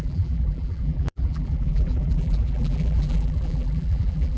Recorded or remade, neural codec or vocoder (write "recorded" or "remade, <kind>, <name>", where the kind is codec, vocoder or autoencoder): remade, vocoder, BigVGAN v2